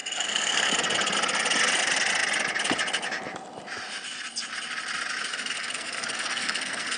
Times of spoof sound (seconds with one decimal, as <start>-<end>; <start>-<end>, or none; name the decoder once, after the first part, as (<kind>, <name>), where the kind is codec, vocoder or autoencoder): 0.0-0.7 (codec, SNAC); 5.3-7.0